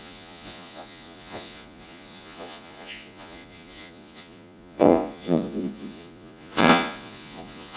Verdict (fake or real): fake